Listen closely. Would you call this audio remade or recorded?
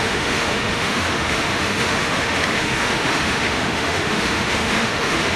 remade